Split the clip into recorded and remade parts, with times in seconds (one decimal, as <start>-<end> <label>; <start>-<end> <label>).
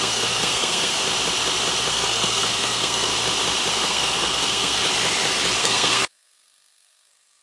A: 0.0-1.0 remade; 1.0-1.9 recorded; 1.9-3.1 remade; 3.1-3.7 recorded; 3.7-4.8 remade; 4.8-5.6 recorded; 5.6-7.4 remade